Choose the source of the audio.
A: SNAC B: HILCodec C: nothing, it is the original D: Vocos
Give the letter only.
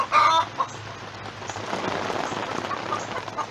C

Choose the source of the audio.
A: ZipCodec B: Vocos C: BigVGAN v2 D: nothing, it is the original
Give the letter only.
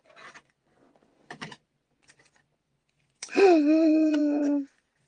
B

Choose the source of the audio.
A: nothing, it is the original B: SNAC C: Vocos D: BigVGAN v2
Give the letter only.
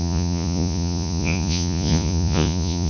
C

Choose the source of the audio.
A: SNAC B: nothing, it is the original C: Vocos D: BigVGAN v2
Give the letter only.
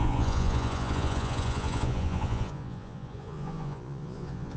C